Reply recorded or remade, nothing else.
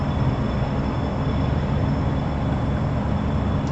recorded